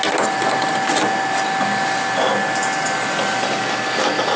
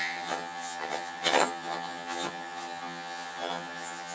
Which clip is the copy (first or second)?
second